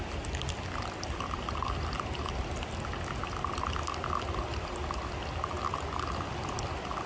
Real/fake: real